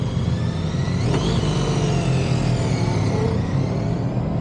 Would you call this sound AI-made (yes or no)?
no